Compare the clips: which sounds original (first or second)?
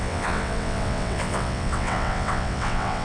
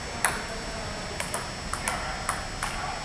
second